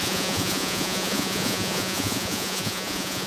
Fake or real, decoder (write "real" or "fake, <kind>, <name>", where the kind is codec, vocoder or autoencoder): fake, vocoder, Vocos